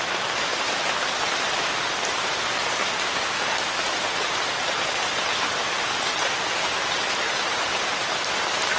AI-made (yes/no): no